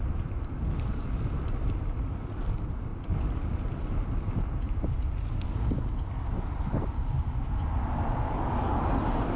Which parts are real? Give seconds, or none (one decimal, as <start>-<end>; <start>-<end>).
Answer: 0.5-1.4; 2.1-9.4

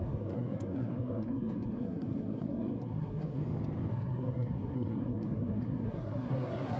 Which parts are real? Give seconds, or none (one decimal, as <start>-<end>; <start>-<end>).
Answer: 3.4-3.9

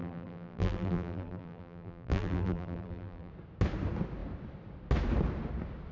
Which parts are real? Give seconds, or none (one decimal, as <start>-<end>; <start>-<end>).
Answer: 3.3-5.9

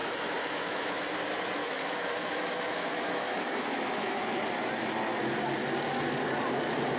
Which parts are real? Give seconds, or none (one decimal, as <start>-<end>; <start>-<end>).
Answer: 1.0-1.6; 4.2-7.0

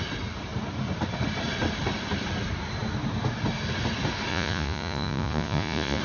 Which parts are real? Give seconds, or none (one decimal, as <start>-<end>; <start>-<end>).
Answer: 0.0-4.3